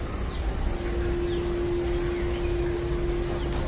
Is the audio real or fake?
real